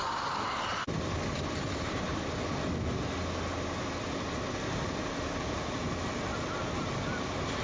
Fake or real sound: real